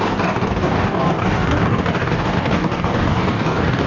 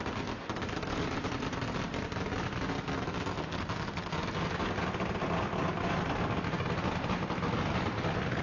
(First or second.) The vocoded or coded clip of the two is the first